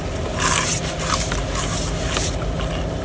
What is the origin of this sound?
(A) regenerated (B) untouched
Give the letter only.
B